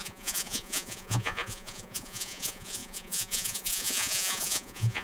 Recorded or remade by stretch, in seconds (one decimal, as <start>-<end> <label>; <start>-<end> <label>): 0.0-5.0 remade